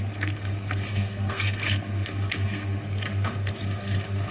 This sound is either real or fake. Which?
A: fake